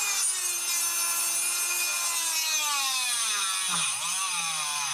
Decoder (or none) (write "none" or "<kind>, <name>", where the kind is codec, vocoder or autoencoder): none